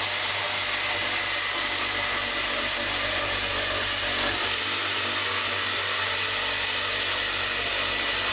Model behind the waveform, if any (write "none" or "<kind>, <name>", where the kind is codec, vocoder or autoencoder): none